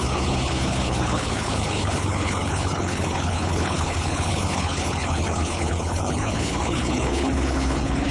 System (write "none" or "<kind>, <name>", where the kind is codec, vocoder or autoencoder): codec, HILCodec